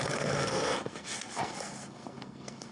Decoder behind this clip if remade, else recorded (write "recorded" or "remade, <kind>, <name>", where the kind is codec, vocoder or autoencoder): remade, codec, SNAC